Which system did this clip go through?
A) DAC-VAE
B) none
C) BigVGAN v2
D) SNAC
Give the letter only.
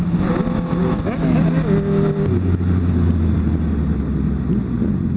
B